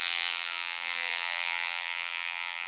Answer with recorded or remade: remade